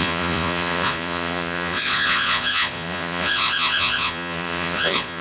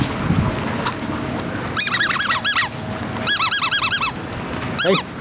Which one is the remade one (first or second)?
first